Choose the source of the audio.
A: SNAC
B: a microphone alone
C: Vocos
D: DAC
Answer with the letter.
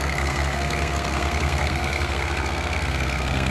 A